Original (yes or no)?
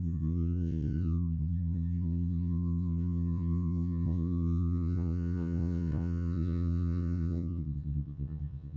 no